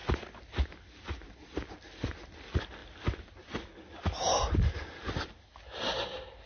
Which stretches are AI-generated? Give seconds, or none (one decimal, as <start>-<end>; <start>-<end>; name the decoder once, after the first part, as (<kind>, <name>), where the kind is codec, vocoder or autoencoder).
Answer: none